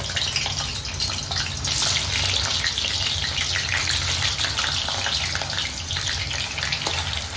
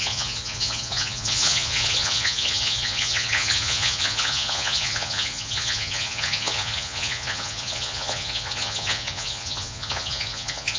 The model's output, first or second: second